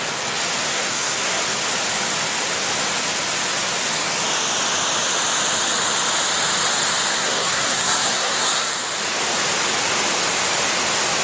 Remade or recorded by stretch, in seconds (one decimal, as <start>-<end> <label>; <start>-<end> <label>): 0.0-0.7 recorded; 0.7-1.4 remade; 1.4-7.1 recorded; 7.1-8.7 remade; 8.7-11.2 recorded